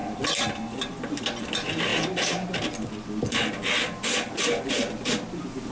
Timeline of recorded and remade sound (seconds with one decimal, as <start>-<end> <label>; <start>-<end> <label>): 0.0-5.7 recorded